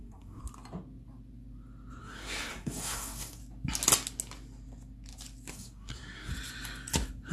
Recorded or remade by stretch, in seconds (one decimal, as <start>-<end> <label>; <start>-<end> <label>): 0.0-0.4 remade; 0.4-2.0 recorded; 2.0-3.4 remade; 3.4-5.5 recorded; 5.5-6.3 remade; 6.3-7.3 recorded